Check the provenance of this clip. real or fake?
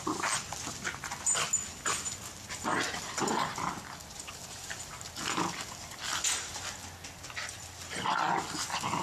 real